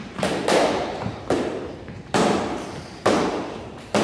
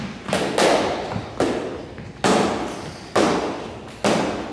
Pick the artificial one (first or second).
first